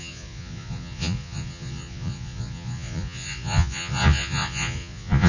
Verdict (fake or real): fake